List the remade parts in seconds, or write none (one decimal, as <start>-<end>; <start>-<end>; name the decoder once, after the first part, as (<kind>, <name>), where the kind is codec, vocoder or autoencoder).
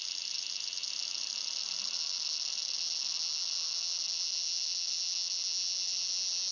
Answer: none